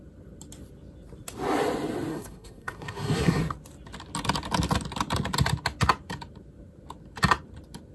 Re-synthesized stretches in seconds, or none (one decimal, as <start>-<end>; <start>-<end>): 2.1-3.4